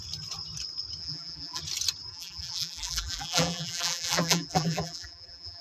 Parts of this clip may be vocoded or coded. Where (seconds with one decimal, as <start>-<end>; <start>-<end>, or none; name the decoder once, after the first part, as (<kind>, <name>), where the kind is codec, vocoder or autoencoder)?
1.0-1.6 (vocoder, BigVGAN v2); 2.1-5.6